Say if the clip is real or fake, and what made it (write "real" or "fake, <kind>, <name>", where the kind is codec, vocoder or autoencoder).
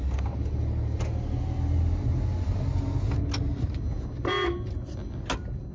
real